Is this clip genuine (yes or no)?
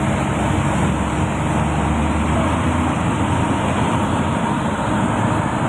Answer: yes